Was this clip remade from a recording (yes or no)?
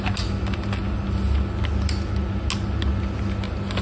no